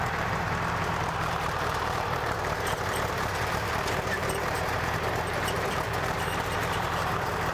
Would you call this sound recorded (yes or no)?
no